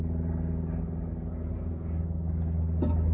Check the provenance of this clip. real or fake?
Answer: real